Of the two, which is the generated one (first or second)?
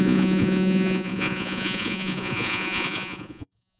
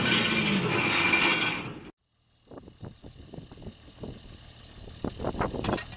first